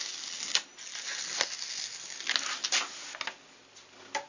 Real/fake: real